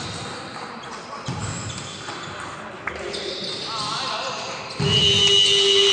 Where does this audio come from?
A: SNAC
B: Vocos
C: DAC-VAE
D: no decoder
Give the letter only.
D